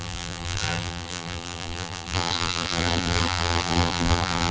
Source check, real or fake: fake